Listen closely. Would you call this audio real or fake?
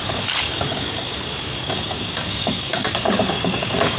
fake